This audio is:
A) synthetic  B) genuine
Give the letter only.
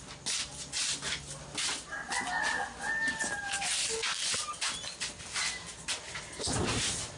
B